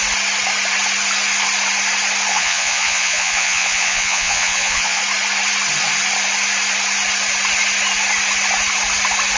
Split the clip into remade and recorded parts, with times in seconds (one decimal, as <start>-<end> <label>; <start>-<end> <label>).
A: 0.0-2.3 recorded; 2.3-5.0 remade; 5.0-9.4 recorded